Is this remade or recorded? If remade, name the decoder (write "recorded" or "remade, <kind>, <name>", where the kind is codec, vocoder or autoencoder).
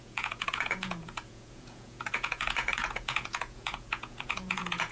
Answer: remade, vocoder, Vocos